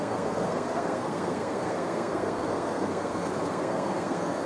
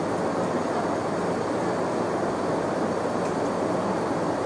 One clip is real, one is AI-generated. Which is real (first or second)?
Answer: second